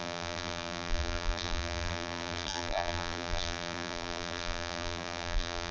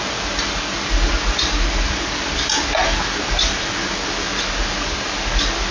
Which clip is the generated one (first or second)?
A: first